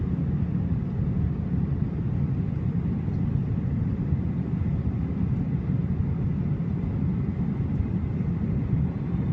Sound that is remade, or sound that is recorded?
recorded